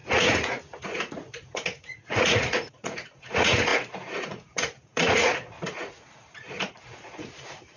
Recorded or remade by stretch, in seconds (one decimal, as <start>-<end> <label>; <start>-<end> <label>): 0.0-7.8 remade